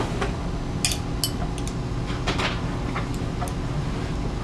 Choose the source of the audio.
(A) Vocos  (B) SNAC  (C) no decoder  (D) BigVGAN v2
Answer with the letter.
C